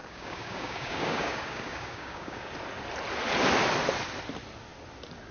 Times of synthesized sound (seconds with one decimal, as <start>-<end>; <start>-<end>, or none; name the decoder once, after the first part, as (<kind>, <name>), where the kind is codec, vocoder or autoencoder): 0.0-2.5 (codec, DAC)